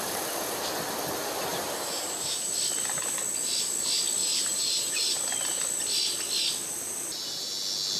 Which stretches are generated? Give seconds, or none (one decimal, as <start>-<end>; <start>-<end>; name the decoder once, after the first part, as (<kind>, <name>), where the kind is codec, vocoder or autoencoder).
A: 1.5-2.5 (vocoder, BigVGAN v2); 4.2-5.2